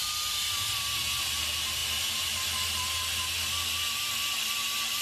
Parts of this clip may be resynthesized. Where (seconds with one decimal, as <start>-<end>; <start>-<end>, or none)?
none